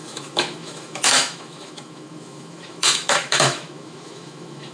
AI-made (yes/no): yes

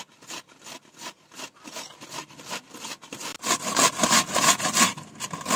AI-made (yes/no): no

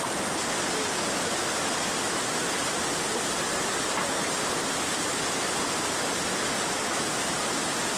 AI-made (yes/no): no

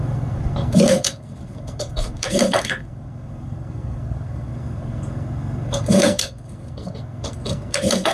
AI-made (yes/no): yes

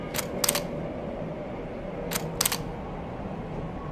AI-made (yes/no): no